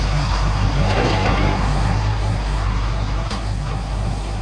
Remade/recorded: remade